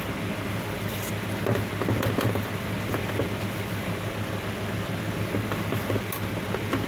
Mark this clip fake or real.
real